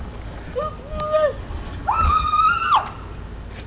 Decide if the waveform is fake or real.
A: real